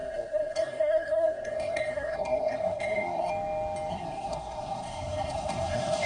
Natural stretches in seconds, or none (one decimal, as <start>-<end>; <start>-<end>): 3.3-3.9